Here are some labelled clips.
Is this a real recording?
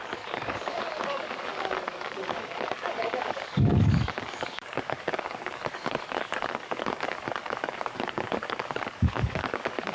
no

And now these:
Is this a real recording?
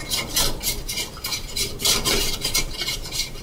no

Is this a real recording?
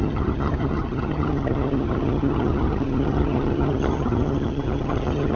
no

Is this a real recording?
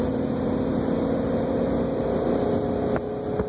yes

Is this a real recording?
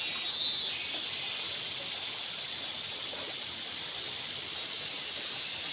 yes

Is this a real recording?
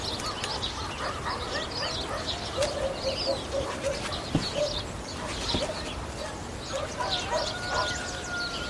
yes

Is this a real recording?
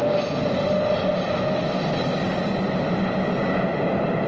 yes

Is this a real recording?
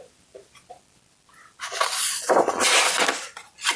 yes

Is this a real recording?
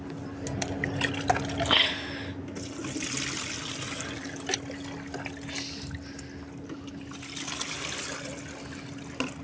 yes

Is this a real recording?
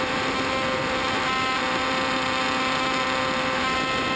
no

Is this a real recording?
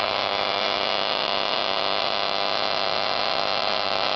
yes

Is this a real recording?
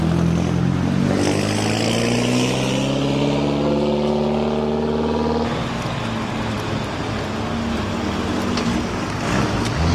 yes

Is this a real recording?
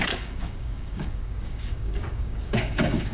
no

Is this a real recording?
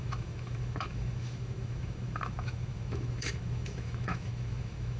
no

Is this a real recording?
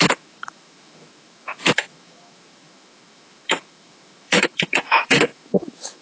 no